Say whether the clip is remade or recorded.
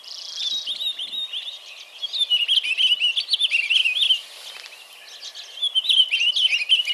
recorded